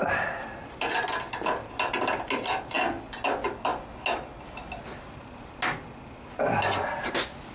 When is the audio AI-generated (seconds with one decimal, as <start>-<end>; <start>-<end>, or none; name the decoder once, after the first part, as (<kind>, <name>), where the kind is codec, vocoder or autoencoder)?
none